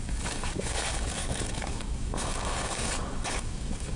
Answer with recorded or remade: remade